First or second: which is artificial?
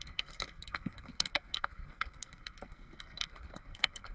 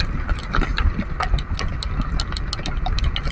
first